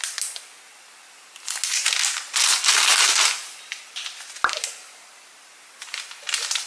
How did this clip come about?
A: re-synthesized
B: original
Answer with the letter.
B